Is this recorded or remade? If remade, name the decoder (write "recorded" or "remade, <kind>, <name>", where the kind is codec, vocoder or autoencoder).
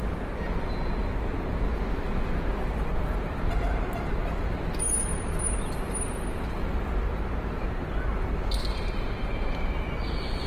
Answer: recorded